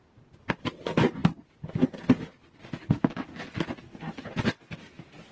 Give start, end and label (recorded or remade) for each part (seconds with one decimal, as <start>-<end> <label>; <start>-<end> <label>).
0.0-5.3 recorded